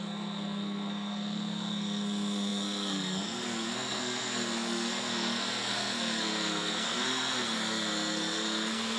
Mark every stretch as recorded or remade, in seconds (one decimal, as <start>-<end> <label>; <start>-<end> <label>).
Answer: 0.0-9.0 remade